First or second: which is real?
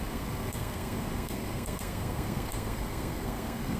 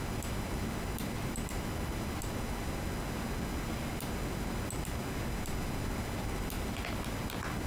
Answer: second